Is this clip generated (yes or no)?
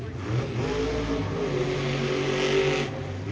no